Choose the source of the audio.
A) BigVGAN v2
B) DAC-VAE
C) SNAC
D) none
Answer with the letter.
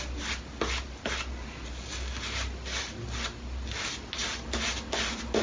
D